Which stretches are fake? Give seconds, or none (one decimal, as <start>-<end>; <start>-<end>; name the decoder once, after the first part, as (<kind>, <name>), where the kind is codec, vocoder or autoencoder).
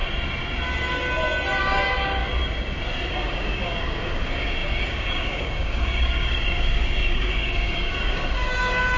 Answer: 1.6-2.2 (codec, DAC); 3.1-9.0